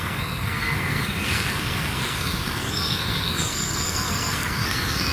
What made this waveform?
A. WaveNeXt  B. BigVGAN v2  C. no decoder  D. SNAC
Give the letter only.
D